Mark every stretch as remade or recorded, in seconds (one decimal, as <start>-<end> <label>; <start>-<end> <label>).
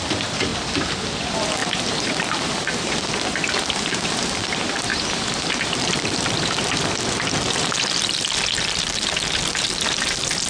0.0-1.6 recorded; 1.6-4.4 remade; 4.4-4.9 recorded; 4.9-9.2 remade; 9.2-10.5 recorded